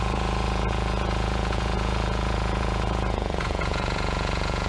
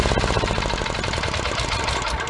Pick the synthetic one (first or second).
first